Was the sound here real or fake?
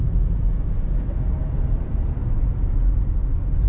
real